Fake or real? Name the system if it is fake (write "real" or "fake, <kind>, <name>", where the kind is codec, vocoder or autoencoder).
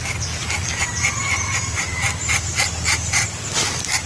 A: real